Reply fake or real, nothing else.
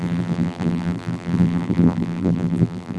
fake